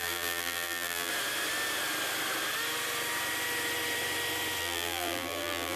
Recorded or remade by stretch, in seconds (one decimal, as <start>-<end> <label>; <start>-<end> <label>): 0.0-1.1 remade; 1.1-4.6 recorded; 4.6-5.8 remade